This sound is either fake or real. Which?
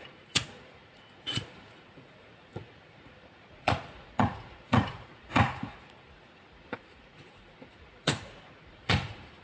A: fake